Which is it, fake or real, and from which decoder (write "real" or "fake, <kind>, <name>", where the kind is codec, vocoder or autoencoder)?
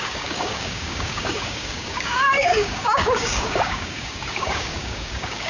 fake, codec, DAC